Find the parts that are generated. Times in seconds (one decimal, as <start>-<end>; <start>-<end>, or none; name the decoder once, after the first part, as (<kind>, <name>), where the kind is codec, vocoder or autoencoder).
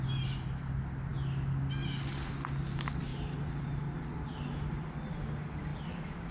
3.1-3.8 (vocoder, BigVGAN v2)